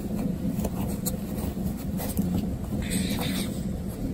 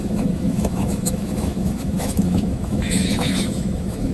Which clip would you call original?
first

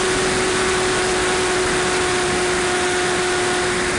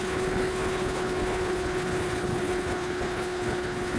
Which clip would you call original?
first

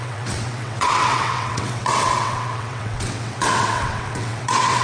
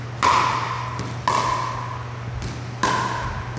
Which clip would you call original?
second